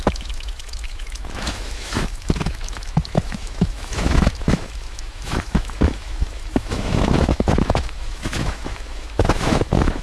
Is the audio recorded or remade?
remade